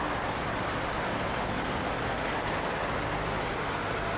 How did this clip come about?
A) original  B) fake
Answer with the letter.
A